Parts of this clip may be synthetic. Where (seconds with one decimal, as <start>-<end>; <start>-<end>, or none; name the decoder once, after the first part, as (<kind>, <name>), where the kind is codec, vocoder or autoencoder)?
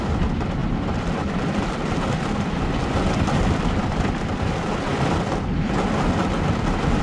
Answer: none